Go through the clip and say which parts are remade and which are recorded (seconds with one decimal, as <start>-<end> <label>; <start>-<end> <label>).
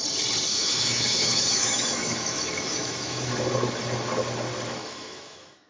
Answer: 0.0-0.5 recorded; 0.5-3.3 remade; 3.3-4.8 recorded; 4.8-5.7 remade